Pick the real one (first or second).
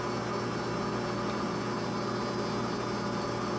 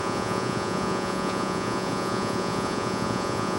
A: first